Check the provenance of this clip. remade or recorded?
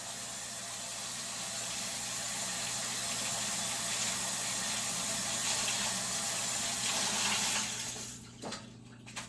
recorded